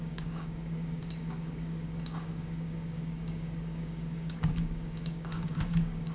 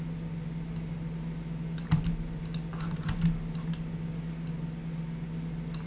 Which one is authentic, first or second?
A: second